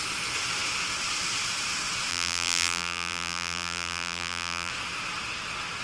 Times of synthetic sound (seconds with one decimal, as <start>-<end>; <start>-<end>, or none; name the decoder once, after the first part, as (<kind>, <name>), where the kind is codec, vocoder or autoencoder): 2.1-4.7 (vocoder, BigVGAN v2)